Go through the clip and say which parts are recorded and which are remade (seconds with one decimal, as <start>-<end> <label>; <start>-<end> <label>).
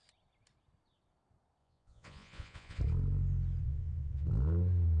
0.0-1.6 recorded; 1.6-2.8 remade; 2.8-3.6 recorded; 3.6-4.3 remade; 4.3-5.0 recorded